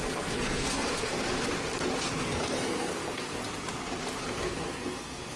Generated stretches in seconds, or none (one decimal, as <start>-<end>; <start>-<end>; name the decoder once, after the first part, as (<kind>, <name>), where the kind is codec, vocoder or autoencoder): 0.0-1.1 (codec, SNAC); 2.0-3.4; 4.2-5.4